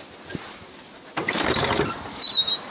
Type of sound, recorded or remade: recorded